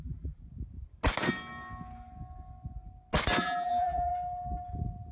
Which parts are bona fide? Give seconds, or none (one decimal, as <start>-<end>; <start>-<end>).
0.4-3.4; 4.1-5.1